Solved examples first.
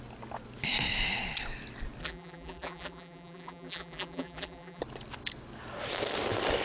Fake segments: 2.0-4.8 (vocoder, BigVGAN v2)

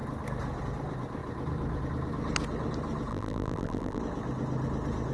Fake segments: 3.1-4.0 (vocoder, BigVGAN v2)

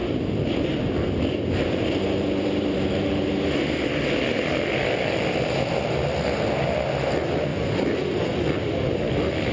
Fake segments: 0.0-3.2 (vocoder, BigVGAN v2); 4.8-5.7; 7.5-8.7